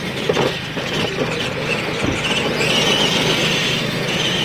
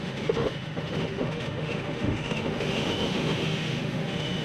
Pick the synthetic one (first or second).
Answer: second